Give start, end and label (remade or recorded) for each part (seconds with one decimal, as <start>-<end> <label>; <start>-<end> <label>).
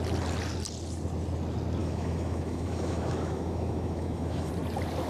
0.0-1.8 recorded; 1.8-4.5 remade; 4.5-5.1 recorded